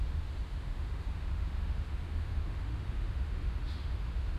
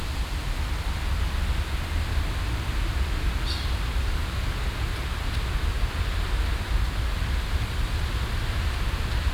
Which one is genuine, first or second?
second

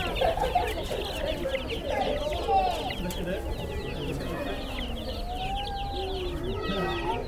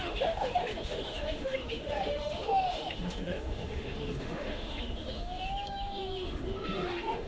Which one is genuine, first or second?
first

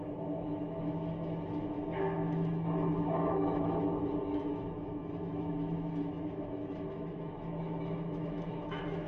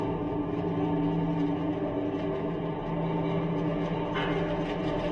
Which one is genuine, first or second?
second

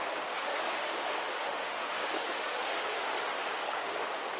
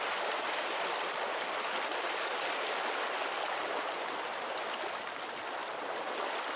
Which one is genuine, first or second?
second